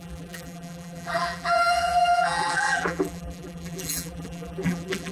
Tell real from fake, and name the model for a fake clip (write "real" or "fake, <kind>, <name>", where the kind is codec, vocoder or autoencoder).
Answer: fake, vocoder, BigVGAN v2